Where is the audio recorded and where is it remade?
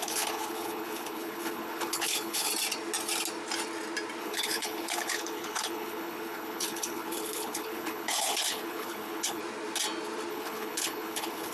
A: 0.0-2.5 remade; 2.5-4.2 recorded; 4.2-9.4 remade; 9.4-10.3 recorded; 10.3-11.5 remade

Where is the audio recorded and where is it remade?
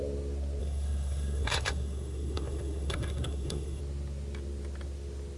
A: 0.0-0.6 recorded; 0.6-3.8 remade; 3.8-5.4 recorded